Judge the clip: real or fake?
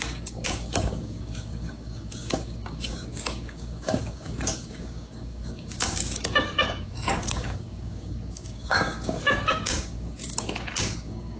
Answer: fake